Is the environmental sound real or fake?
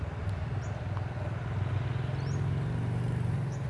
real